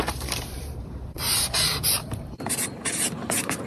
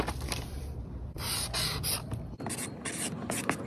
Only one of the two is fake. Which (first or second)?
first